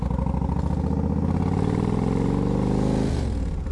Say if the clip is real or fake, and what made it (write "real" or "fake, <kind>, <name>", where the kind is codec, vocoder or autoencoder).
real